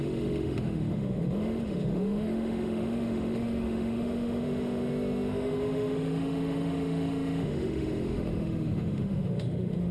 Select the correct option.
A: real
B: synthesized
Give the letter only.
B